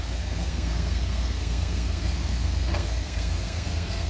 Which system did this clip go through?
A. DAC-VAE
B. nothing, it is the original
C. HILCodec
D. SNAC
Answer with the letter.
D